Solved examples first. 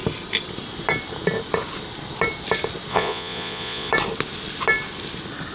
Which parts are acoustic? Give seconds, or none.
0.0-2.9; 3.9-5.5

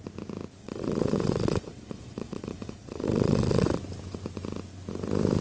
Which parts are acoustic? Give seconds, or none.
0.0-0.6; 3.8-5.4